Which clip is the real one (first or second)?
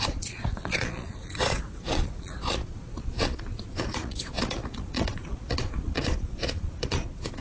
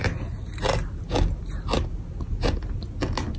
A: second